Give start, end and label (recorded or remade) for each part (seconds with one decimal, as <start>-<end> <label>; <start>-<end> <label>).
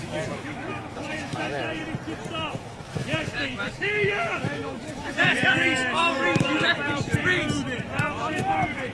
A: 0.0-1.8 remade; 1.8-2.5 recorded; 2.5-7.4 remade; 7.4-8.1 recorded; 8.1-8.9 remade